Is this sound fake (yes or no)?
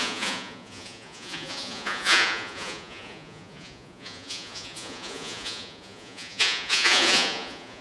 yes